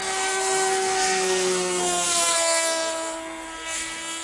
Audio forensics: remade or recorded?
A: remade